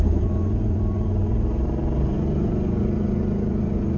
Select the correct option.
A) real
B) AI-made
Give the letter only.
B